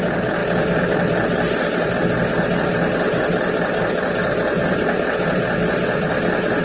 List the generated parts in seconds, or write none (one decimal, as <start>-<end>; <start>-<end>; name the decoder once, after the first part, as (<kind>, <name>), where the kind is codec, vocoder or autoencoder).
0.4-1.9 (vocoder, BigVGAN v2); 4.2-5.4

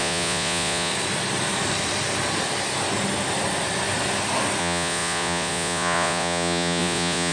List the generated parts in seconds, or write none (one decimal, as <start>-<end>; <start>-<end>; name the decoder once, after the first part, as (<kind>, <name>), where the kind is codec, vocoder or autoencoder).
0.0-0.9 (vocoder, Vocos); 4.6-7.3

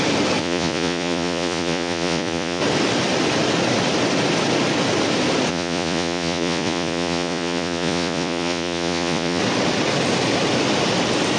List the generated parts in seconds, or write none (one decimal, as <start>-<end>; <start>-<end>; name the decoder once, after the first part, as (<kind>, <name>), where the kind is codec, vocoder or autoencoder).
0.4-2.6 (vocoder, Vocos); 5.5-9.4

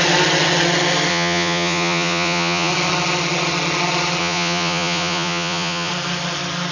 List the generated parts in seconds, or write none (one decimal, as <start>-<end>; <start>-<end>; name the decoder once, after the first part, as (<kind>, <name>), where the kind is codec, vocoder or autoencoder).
1.1-2.7 (vocoder, Vocos); 4.2-5.9